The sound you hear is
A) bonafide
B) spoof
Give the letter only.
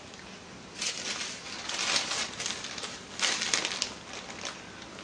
A